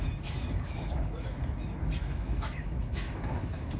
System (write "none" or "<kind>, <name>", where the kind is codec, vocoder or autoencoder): autoencoder, DAC-VAE